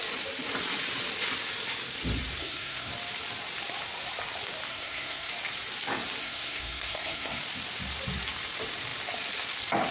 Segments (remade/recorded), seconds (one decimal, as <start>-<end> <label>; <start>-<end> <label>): 0.0-2.4 recorded; 2.4-2.9 remade; 2.9-4.7 recorded; 4.7-5.3 remade; 5.3-6.2 recorded; 6.2-7.4 remade; 7.4-9.9 recorded

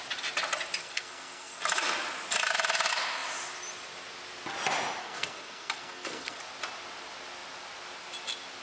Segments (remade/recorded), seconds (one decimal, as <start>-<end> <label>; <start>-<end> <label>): 0.0-0.8 recorded; 0.8-1.6 remade; 1.6-5.0 recorded; 5.0-6.4 remade; 6.4-8.6 recorded

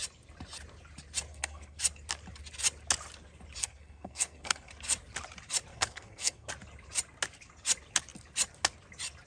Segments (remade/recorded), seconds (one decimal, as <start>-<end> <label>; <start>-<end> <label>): 0.0-1.3 recorded; 1.3-1.8 remade; 1.8-3.6 recorded; 3.6-4.7 remade; 4.7-5.7 recorded; 5.7-6.5 remade; 6.5-9.3 recorded

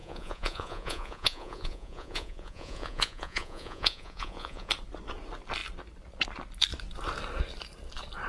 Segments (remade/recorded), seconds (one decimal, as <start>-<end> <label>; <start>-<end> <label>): 0.0-4.7 remade; 4.7-8.3 recorded

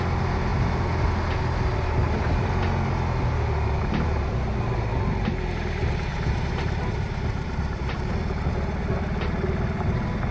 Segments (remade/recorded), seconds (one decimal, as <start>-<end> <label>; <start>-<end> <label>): 0.0-6.1 recorded; 6.1-7.8 remade; 7.8-10.3 recorded